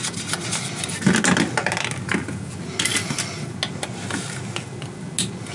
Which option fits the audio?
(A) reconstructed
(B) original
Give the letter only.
B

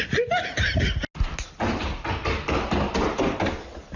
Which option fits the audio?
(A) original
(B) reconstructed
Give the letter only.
A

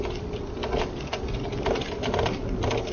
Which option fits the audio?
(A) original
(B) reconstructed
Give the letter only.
A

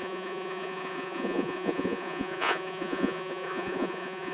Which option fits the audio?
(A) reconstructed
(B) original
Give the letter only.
A